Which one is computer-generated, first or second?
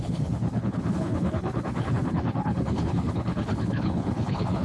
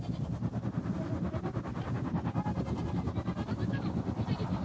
first